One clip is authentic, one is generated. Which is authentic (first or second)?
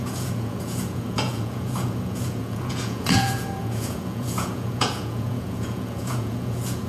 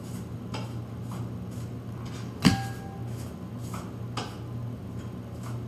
second